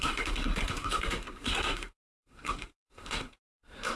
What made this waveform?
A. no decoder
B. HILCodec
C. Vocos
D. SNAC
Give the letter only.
D